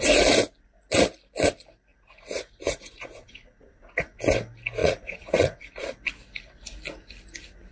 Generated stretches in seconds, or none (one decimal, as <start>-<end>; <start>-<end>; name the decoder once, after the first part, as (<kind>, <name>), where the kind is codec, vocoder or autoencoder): 1.9-4.2 (vocoder, Vocos); 4.8-5.6